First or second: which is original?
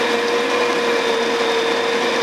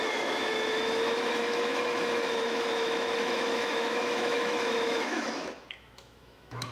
first